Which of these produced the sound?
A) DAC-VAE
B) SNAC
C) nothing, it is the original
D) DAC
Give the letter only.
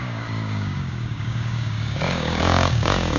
D